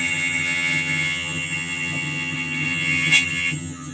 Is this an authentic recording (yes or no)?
no